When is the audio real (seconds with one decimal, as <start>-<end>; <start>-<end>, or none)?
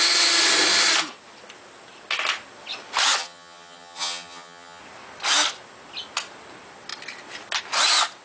0.0-3.2; 4.8-8.2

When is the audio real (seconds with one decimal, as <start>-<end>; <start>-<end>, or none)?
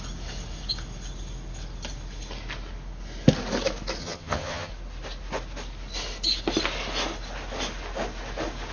0.0-4.0; 4.7-8.7